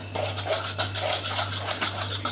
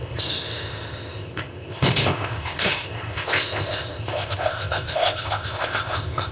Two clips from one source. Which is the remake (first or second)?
second